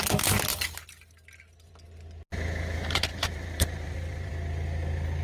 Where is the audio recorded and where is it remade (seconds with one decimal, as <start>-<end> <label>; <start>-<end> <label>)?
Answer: 0.0-3.1 recorded; 3.1-4.3 remade; 4.3-5.2 recorded